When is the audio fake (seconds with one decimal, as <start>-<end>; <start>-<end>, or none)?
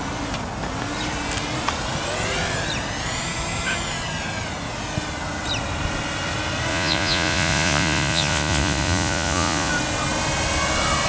6.7-9.7